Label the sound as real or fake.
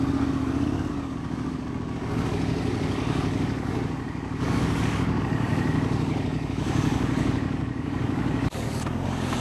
fake